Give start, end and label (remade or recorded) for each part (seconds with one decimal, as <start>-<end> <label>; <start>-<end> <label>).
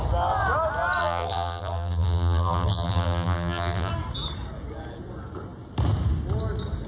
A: 0.0-1.0 recorded; 1.0-3.9 remade; 3.9-6.9 recorded